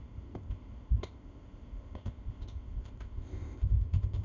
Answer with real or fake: fake